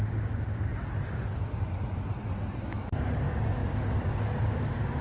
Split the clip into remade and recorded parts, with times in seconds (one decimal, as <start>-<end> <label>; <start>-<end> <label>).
0.0-0.7 remade; 0.7-2.6 recorded; 2.6-5.0 remade